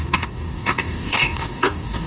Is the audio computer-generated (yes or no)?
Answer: yes